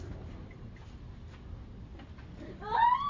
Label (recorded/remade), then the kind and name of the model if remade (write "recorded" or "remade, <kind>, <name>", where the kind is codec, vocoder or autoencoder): recorded